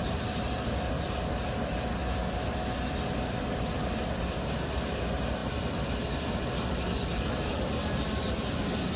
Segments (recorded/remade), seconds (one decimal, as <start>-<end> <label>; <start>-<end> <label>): 0.0-9.0 recorded